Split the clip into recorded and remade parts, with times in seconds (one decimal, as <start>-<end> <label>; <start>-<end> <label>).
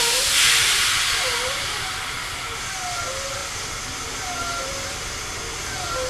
0.0-6.1 recorded